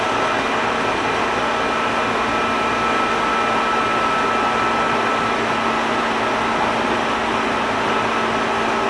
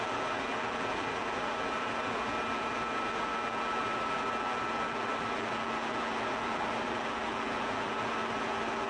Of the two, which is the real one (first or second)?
first